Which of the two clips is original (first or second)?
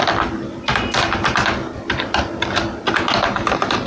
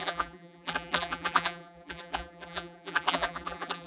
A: first